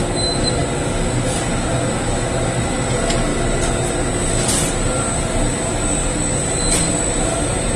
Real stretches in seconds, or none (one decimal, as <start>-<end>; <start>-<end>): 0.0-7.8